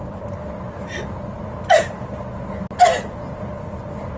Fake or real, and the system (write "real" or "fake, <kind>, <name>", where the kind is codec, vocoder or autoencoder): real